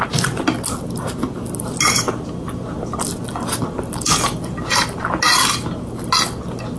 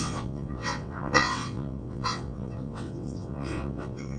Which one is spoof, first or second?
second